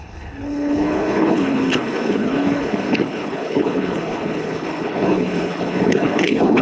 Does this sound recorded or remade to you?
remade